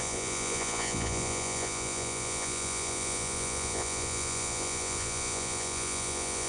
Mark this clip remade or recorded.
remade